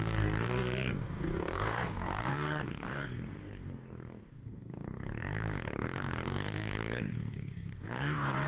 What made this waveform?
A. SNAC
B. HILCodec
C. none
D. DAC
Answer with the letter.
D